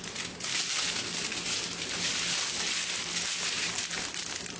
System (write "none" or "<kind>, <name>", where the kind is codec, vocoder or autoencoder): none